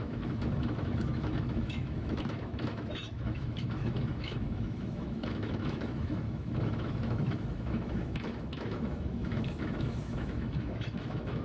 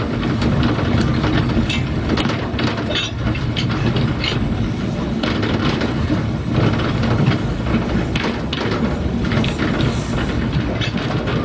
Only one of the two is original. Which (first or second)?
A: second